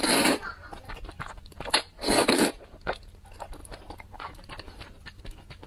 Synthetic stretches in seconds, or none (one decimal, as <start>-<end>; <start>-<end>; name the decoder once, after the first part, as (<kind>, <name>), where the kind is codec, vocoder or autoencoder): 3.6-5.2 (vocoder, BigVGAN v2)